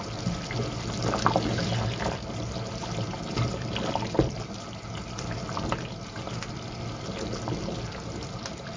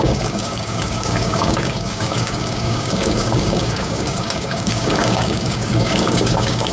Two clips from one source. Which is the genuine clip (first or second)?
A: first